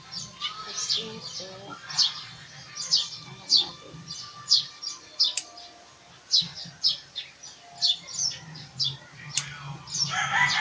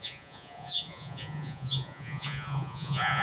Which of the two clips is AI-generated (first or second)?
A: second